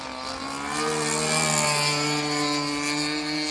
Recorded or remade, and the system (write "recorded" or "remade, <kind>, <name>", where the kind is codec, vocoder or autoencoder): recorded